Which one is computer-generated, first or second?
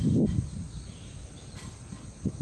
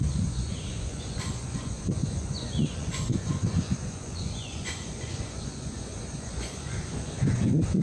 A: second